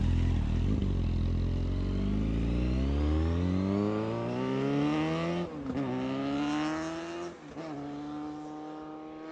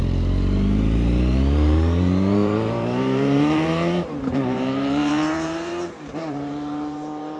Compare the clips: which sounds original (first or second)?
first